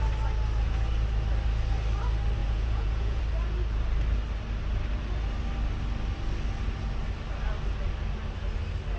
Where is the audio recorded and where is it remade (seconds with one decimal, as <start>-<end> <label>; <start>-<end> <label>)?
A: 0.0-2.4 recorded; 2.4-3.2 remade; 3.2-9.0 recorded